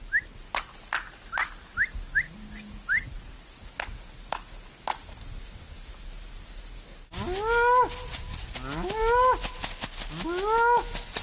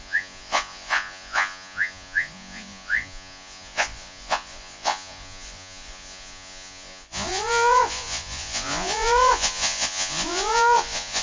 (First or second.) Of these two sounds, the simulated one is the second